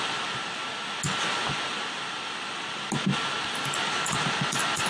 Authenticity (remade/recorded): recorded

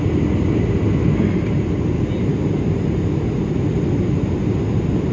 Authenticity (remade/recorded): recorded